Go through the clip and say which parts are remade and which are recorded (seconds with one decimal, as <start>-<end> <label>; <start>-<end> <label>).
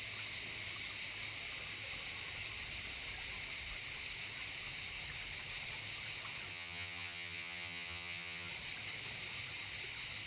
0.0-6.5 recorded; 6.5-8.5 remade; 8.5-10.3 recorded